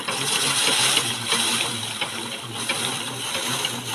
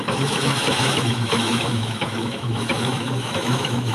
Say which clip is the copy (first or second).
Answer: second